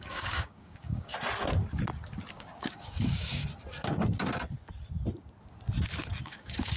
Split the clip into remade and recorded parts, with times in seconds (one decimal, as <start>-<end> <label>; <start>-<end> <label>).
0.0-1.1 remade; 1.1-2.3 recorded; 2.3-3.4 remade; 3.4-6.2 recorded; 6.2-6.8 remade